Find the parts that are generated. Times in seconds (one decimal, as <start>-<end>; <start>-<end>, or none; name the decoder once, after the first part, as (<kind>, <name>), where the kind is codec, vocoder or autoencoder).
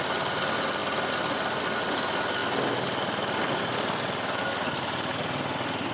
none